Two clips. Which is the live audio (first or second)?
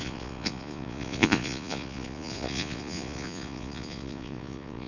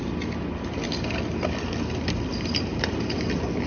second